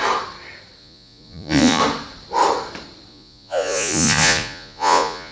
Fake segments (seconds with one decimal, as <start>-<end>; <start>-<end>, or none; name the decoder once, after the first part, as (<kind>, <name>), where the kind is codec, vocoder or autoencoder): 0.8-1.8 (vocoder, Vocos); 3.1-5.3